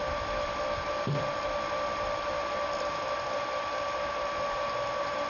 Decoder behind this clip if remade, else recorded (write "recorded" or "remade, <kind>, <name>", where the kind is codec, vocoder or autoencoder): recorded